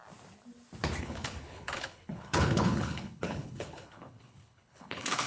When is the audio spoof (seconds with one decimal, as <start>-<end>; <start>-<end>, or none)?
1.0-5.3